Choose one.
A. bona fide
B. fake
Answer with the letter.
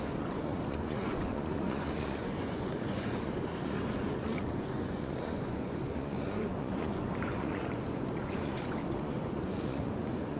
B